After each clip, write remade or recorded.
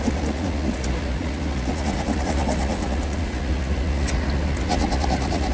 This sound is remade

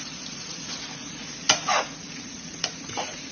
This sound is remade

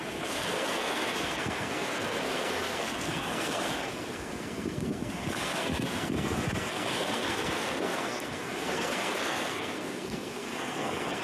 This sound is remade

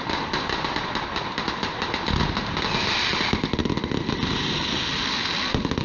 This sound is recorded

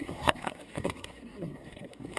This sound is remade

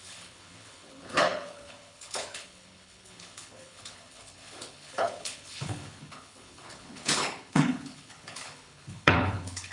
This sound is remade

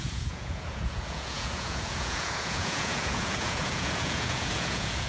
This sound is remade